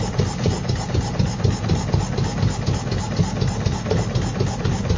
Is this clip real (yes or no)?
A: yes